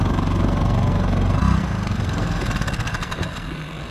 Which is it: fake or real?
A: fake